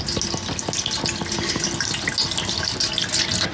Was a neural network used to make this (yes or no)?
no